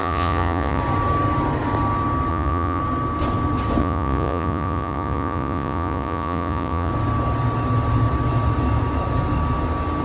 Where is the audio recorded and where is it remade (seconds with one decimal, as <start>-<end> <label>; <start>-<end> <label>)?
0.0-0.8 remade; 0.8-2.3 recorded; 2.3-2.8 remade; 2.8-3.8 recorded; 3.8-6.9 remade; 6.9-10.0 recorded